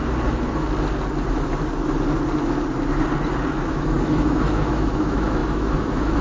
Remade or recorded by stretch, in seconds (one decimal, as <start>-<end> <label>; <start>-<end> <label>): 0.0-3.7 recorded; 3.7-6.2 remade